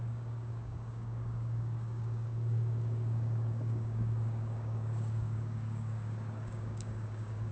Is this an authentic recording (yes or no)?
no